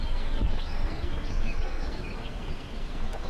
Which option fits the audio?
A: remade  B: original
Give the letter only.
A